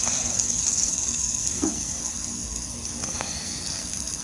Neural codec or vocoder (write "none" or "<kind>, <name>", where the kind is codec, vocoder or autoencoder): codec, SNAC